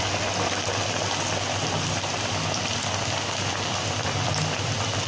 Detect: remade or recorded recorded